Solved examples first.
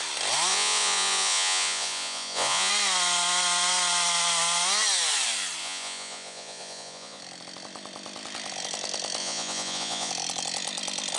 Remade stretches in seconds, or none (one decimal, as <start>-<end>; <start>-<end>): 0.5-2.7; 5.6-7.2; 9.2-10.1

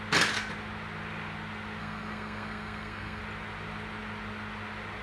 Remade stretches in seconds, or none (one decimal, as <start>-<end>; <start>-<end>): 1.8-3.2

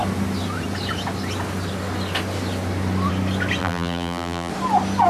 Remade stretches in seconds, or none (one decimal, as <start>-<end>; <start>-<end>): 3.6-4.5

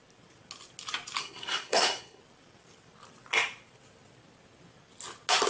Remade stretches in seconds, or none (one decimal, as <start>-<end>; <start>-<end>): 1.2-2.2